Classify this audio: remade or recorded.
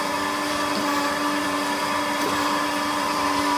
remade